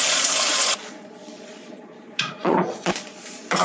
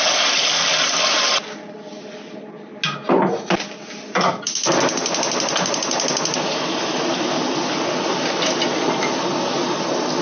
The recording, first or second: second